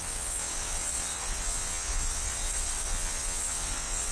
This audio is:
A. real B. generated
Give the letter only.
B